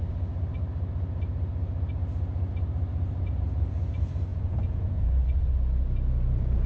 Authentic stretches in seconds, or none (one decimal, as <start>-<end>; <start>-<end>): 0.0-4.3; 5.1-6.7